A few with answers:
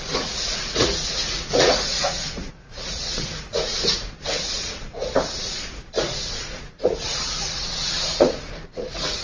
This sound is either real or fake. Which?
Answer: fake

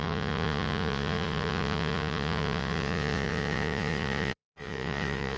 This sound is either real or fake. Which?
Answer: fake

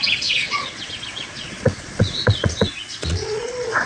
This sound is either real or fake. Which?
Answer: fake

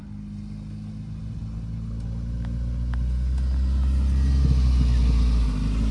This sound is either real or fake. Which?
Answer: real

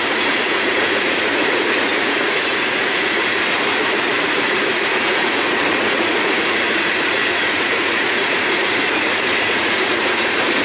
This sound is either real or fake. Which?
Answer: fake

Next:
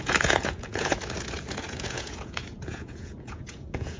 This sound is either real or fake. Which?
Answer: fake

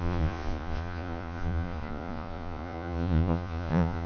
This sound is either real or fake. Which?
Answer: fake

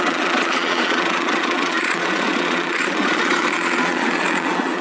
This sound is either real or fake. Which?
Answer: fake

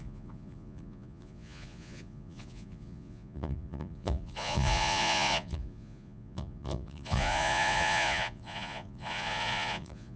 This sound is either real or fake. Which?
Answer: fake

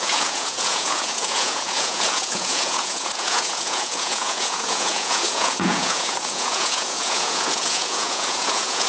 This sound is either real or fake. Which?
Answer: fake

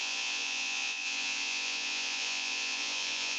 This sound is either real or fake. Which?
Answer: fake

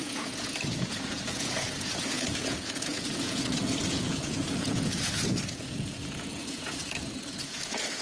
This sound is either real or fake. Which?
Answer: fake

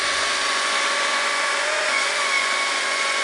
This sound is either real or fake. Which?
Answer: fake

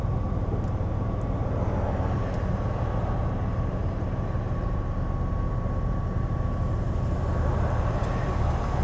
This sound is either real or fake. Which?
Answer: real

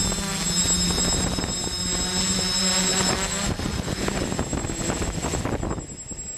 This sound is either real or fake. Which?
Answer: real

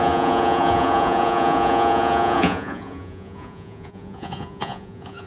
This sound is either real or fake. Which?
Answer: fake